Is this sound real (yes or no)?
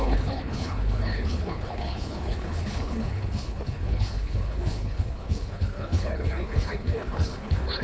no